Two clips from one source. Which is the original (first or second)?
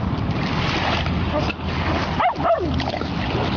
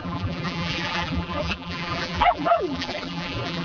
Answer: first